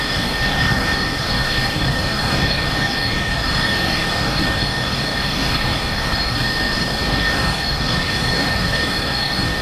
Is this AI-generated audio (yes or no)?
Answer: yes